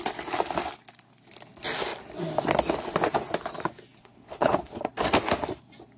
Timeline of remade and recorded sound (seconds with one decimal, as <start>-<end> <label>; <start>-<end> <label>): 0.0-4.0 recorded; 4.0-4.7 remade; 4.7-6.0 recorded